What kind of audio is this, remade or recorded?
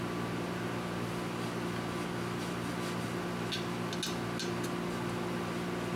recorded